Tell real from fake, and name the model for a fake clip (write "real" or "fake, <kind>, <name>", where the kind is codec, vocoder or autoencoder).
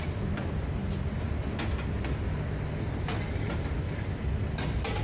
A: real